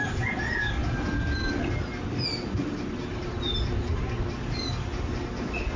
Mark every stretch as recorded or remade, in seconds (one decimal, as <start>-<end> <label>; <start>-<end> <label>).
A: 0.0-5.8 recorded

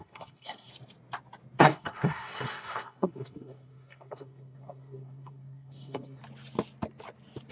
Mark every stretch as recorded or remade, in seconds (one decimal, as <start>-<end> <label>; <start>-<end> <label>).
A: 0.0-0.7 remade; 0.7-1.6 recorded; 1.6-6.2 remade; 6.2-7.5 recorded